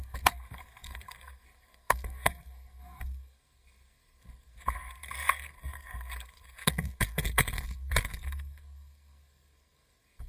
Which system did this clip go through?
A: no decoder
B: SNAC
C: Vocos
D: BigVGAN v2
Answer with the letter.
B